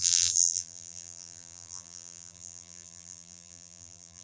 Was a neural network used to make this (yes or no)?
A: yes